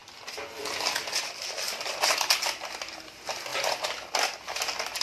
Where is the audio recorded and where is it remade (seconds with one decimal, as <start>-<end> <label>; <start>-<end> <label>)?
0.0-5.0 recorded